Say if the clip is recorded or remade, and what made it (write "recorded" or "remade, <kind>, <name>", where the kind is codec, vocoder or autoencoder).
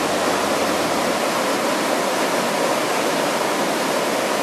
recorded